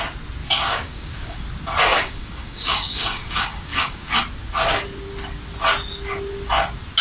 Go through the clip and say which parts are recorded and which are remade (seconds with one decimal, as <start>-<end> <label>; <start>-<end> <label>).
0.0-0.4 recorded; 0.4-1.4 remade; 1.4-1.9 recorded; 1.9-4.2 remade; 4.2-7.0 recorded